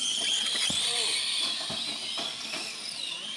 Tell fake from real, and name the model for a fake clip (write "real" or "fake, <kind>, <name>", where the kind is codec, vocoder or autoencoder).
real